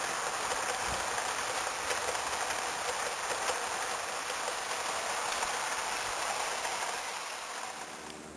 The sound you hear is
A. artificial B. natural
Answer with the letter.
B